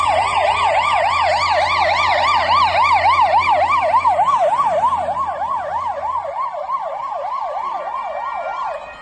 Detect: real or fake fake